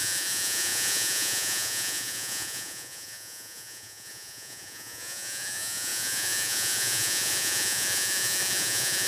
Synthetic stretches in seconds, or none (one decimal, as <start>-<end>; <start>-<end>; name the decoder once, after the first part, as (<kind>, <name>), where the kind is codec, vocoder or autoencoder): 0.0-9.1 (vocoder, Vocos)